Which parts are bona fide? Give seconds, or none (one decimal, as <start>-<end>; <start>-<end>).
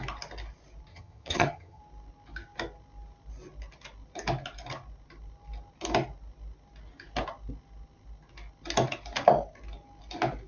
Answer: 0.0-0.9; 1.8-10.5